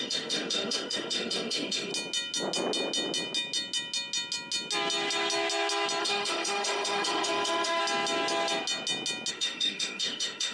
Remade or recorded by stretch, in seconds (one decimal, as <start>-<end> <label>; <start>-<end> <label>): 0.0-1.9 remade; 1.9-6.0 recorded; 6.0-7.8 remade; 7.8-9.3 recorded; 9.3-10.5 remade